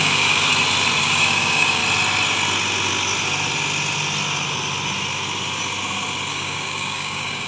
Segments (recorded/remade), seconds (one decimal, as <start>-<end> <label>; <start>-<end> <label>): 0.0-0.5 remade; 0.5-1.0 recorded; 1.0-1.8 remade; 1.8-6.3 recorded; 6.3-7.5 remade